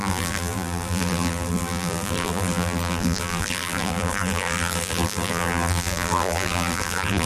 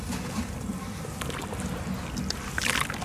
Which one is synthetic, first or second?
first